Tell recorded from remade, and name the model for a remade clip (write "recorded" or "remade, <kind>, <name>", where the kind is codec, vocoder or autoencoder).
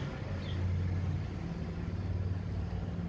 recorded